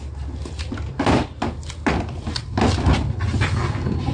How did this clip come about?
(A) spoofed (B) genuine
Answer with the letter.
B